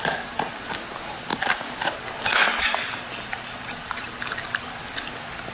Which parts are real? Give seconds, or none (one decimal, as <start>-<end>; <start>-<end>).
0.0-5.5